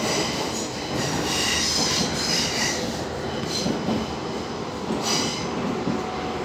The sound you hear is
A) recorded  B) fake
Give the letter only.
A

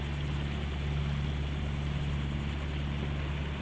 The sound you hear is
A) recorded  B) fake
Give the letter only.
A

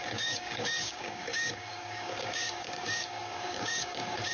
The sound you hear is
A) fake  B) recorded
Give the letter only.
A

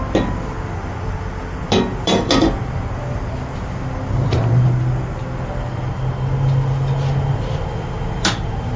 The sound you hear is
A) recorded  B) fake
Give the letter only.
A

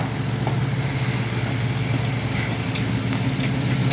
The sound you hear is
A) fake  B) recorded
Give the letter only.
B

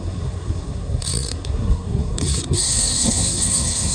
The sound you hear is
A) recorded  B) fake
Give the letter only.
B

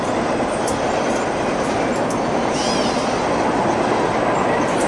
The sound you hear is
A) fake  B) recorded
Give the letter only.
B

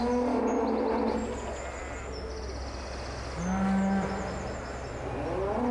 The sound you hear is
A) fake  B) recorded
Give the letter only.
B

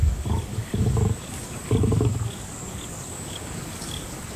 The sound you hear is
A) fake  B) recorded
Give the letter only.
A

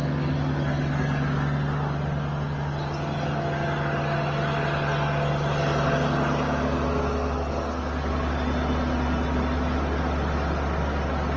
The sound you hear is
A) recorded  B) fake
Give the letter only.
A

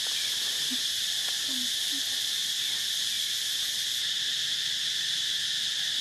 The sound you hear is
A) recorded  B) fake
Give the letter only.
A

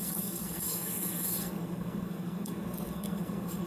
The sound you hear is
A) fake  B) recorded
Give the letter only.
A